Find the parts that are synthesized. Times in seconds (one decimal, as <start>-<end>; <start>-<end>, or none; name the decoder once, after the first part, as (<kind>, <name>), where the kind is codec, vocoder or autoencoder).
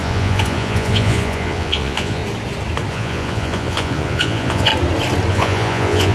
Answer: 0.0-2.2 (vocoder, Vocos); 2.9-4.7; 5.3-6.1